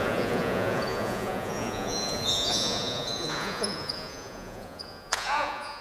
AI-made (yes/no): yes